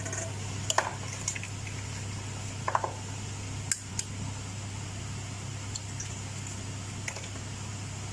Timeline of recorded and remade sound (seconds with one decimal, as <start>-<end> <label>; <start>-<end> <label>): 0.0-8.1 recorded